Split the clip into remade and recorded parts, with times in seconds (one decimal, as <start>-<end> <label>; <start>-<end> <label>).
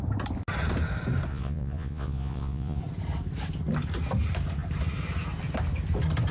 0.0-1.3 recorded; 1.3-2.8 remade; 2.8-6.3 recorded